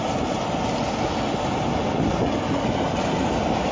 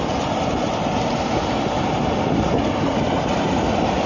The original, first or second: first